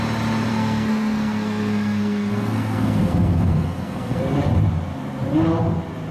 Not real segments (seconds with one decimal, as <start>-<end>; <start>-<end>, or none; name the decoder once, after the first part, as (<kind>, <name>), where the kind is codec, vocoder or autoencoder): 0.5-4.2 (codec, SNAC)

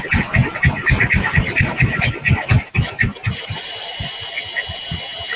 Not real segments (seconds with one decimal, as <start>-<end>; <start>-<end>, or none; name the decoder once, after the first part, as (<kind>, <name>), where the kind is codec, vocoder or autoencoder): none